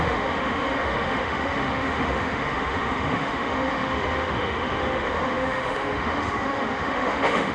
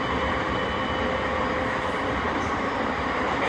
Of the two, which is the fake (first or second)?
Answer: first